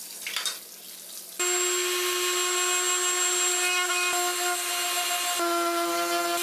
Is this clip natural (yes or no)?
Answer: yes